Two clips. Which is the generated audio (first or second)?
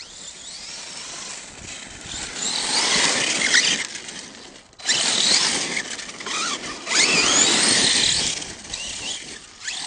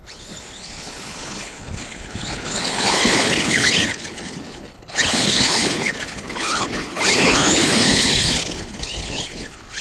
second